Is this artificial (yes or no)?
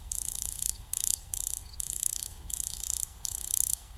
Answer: yes